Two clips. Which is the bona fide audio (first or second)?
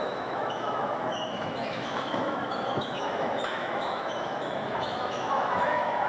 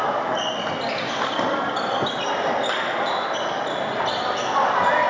second